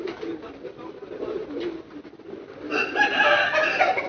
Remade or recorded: recorded